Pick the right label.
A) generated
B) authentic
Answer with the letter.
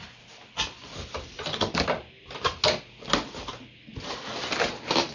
B